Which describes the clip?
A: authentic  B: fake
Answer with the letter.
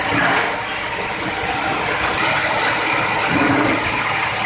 A